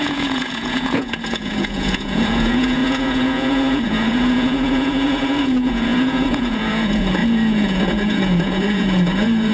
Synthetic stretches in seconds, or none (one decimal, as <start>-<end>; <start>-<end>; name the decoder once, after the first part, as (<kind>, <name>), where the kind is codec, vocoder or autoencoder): 0.0-9.5 (vocoder, Vocos)